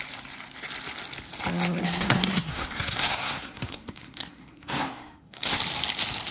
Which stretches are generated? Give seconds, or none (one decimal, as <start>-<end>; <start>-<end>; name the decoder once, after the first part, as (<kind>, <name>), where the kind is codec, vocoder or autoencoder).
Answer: 1.8-5.6 (codec, SNAC)